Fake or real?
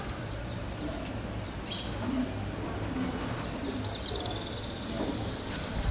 real